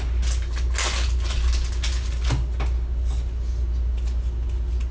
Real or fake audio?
real